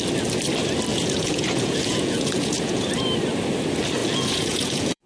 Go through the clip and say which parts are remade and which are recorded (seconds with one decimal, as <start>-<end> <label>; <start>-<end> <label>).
0.0-0.9 recorded; 0.9-3.0 remade; 3.0-4.0 recorded; 4.0-5.1 remade